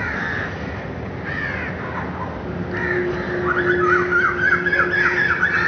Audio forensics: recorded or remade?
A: recorded